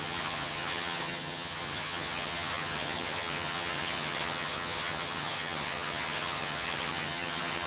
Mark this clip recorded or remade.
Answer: remade